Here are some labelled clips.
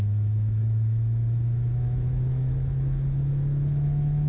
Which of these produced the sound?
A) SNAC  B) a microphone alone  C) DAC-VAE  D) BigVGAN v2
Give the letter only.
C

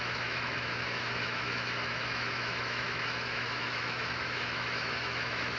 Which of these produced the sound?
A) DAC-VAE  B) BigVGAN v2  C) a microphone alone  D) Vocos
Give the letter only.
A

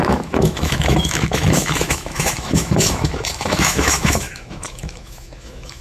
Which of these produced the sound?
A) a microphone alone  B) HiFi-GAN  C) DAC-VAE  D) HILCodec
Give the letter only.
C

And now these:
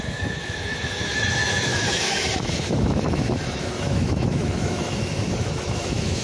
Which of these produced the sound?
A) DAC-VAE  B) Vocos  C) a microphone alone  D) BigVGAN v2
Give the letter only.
A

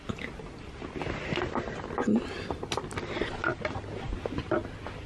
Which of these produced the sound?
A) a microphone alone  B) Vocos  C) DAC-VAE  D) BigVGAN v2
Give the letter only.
A